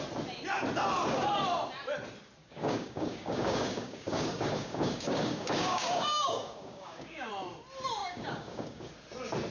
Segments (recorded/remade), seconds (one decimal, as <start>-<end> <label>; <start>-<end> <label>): 0.0-2.4 recorded; 2.4-7.3 remade; 7.3-8.0 recorded; 8.0-8.9 remade; 8.9-9.5 recorded